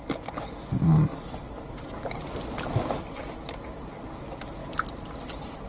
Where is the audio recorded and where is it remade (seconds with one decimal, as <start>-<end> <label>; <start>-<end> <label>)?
0.0-5.7 recorded

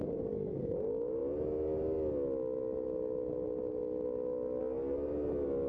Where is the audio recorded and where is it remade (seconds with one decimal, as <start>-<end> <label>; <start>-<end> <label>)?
0.0-5.7 recorded

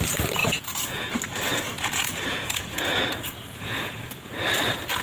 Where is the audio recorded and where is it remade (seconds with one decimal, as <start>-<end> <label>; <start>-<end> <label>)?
0.0-0.4 recorded; 0.4-1.1 remade; 1.1-1.5 recorded; 1.5-4.5 remade; 4.5-5.0 recorded

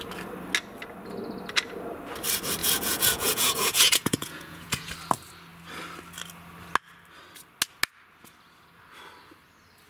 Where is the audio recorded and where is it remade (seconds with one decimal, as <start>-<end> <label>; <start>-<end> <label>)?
0.0-2.6 recorded; 2.6-4.9 remade; 4.9-9.9 recorded

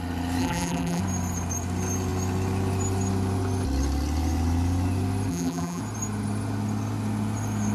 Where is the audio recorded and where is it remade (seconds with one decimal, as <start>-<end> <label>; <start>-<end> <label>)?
0.0-0.4 recorded; 0.4-1.0 remade; 1.0-5.3 recorded; 5.3-5.8 remade; 5.8-7.7 recorded

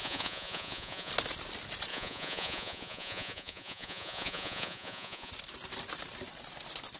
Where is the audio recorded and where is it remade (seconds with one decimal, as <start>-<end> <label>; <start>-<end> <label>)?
0.0-1.1 remade; 1.1-1.9 recorded; 1.9-5.3 remade; 5.3-7.0 recorded

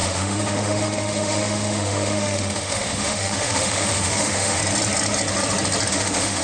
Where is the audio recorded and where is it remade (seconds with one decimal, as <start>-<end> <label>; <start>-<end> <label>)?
0.0-4.6 remade; 4.6-5.9 recorded; 5.9-6.4 remade